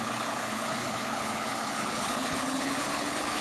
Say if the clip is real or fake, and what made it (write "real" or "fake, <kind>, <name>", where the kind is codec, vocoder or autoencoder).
fake, codec, HILCodec